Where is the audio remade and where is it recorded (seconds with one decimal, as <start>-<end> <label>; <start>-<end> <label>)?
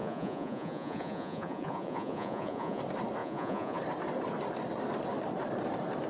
0.0-2.8 remade; 2.8-3.2 recorded; 3.2-3.8 remade; 3.8-6.1 recorded